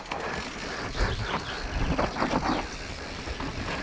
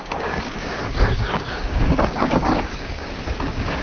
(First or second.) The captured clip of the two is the first